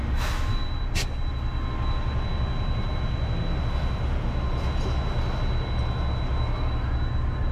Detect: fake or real real